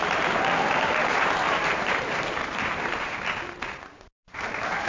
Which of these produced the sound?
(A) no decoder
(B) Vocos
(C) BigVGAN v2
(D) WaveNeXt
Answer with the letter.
C